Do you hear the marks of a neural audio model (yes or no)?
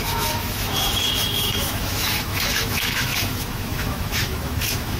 yes